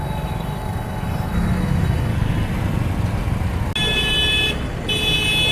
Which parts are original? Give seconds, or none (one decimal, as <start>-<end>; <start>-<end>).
2.1-5.5